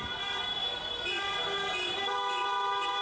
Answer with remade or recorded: recorded